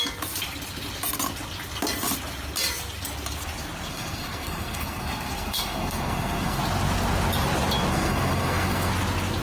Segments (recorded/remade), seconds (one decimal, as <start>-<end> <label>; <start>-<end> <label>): 0.0-3.9 recorded; 3.9-6.6 remade; 6.6-7.9 recorded; 7.9-8.9 remade; 8.9-9.4 recorded